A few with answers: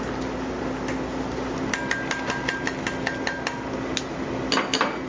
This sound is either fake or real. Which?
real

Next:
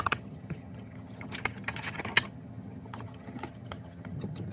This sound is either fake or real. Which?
fake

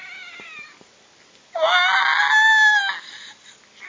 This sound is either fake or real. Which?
real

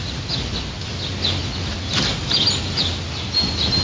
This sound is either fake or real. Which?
real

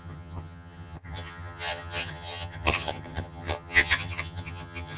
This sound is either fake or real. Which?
fake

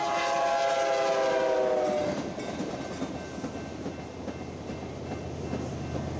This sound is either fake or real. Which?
real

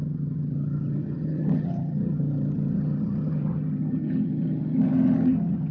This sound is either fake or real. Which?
fake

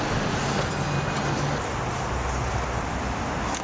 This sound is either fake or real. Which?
real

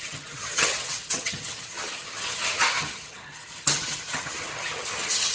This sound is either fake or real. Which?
fake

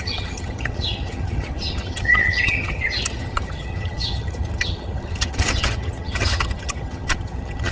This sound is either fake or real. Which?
fake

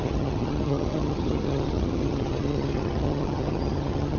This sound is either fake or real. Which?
fake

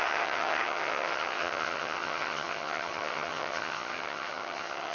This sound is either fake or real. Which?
fake